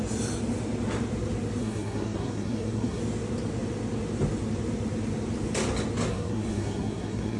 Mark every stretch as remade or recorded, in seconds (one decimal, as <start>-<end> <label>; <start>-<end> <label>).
0.0-1.6 recorded; 1.6-3.0 remade; 3.0-6.1 recorded; 6.1-7.4 remade